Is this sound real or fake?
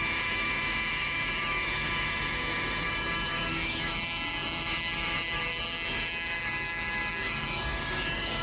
fake